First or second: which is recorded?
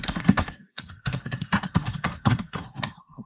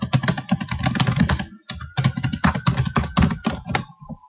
second